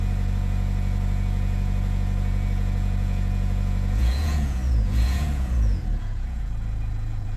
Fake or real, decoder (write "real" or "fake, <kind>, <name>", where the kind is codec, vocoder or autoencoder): fake, vocoder, Vocos